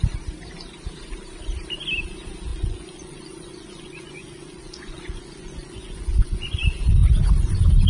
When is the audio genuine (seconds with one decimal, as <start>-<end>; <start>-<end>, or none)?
0.0-2.5; 6.6-7.0